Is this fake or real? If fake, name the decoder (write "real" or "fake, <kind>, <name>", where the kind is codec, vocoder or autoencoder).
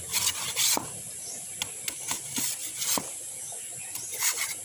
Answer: real